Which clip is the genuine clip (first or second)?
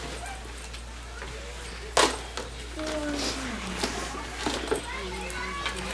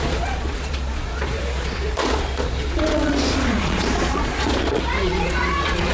first